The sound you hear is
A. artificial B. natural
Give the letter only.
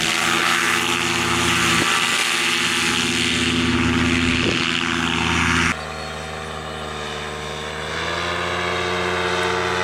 B